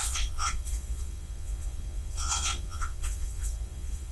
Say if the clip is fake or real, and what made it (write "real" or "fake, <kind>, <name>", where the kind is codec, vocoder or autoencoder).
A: fake, vocoder, Vocos